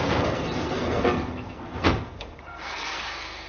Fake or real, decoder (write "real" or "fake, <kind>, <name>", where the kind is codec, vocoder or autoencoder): fake, codec, SNAC